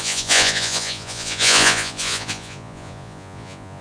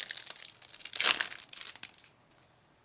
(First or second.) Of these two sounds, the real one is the second